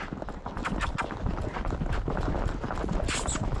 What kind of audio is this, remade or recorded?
recorded